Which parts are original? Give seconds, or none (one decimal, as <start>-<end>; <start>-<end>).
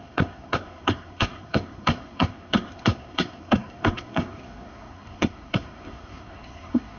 none